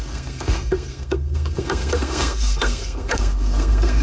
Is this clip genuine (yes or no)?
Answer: no